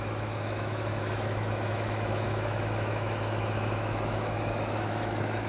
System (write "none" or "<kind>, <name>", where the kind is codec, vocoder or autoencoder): autoencoder, DAC-VAE